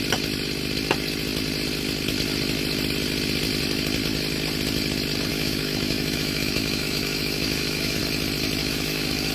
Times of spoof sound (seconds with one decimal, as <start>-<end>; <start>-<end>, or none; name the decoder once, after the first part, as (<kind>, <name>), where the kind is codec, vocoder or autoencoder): 5.3-8.0 (autoencoder, DAC-VAE); 8.6-9.3